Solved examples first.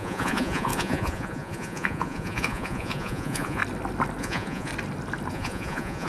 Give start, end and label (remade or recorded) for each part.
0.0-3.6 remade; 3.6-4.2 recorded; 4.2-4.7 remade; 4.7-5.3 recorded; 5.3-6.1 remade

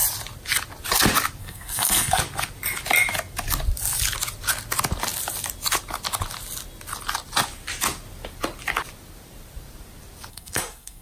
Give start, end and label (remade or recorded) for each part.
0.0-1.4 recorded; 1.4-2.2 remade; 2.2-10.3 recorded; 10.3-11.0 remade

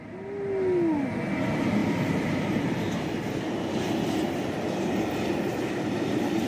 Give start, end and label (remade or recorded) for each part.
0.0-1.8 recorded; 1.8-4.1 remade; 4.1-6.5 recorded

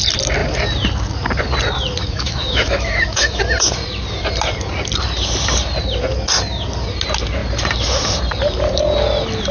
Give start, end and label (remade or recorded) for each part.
0.0-2.0 recorded; 2.0-3.4 remade; 3.4-9.5 recorded

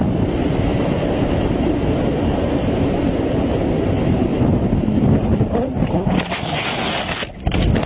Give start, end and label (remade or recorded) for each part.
0.0-0.7 recorded; 0.7-4.9 remade; 4.9-7.9 recorded